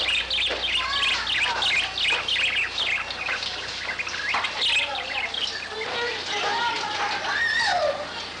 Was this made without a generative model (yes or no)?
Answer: yes